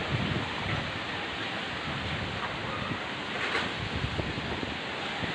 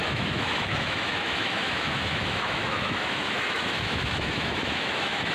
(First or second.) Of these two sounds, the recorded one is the first